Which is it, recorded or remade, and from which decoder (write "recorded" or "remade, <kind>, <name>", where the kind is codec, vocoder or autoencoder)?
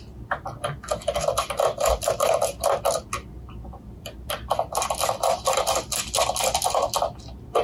recorded